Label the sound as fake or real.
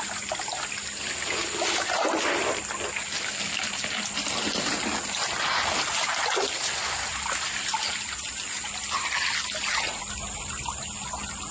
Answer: real